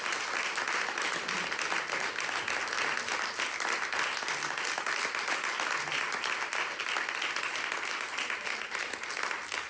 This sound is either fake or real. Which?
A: real